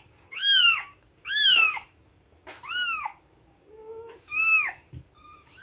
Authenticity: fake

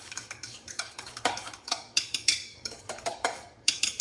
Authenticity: fake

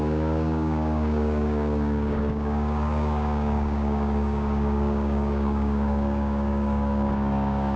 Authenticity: fake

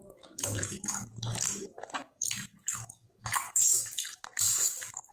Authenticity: fake